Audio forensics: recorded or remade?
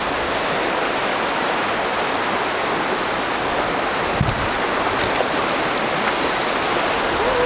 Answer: recorded